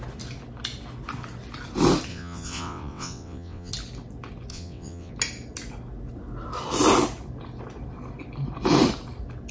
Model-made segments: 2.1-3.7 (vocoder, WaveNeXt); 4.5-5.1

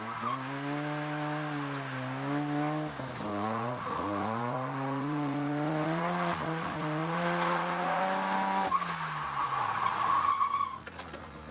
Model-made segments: 3.3-8.0 (vocoder, Vocos); 9.4-11.5

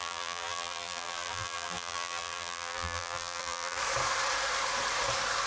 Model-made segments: 0.0-3.8 (vocoder, BigVGAN v2)

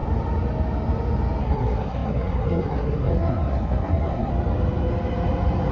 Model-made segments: 1.4-4.3 (codec, SNAC)